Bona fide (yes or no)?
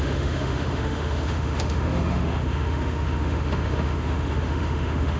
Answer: no